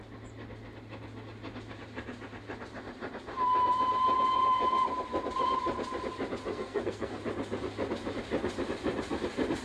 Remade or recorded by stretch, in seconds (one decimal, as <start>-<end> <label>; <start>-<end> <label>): 0.0-6.5 recorded; 6.5-7.2 remade; 7.2-9.6 recorded